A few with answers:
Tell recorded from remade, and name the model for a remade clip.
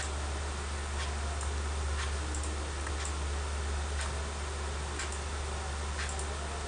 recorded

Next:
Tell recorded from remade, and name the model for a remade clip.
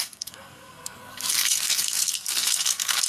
remade, codec, SNAC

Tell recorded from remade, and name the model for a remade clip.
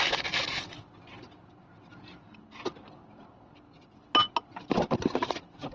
recorded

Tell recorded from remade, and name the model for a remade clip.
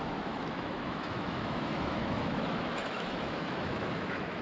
remade, autoencoder, DAC-VAE